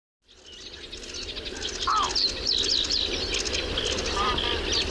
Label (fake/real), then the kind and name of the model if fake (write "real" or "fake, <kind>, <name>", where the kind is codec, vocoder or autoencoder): real